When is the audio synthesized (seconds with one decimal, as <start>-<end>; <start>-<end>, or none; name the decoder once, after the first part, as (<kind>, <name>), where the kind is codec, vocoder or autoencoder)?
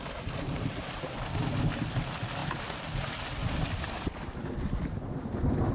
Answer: none